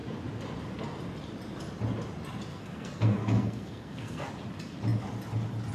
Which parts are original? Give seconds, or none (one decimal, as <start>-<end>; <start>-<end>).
0.0-2.5; 4.3-5.7